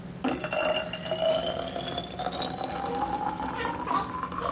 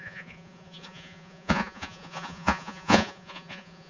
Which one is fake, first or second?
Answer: second